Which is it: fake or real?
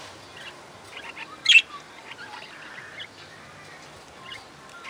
real